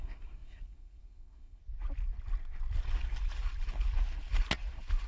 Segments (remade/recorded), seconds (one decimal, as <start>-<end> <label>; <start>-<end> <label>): 0.0-1.6 remade; 1.6-5.1 recorded